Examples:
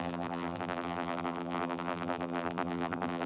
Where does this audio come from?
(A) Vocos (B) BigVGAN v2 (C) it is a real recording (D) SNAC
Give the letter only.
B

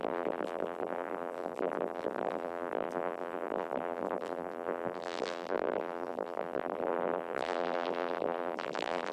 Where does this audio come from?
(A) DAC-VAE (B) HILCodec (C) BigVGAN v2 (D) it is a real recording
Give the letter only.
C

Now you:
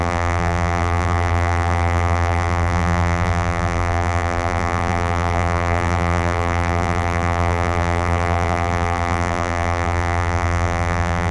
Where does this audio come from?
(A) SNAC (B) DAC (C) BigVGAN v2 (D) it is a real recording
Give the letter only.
C